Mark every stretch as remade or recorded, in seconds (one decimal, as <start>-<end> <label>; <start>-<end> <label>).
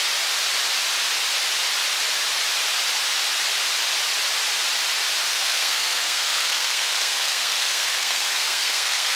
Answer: 0.0-5.3 recorded; 5.3-9.2 remade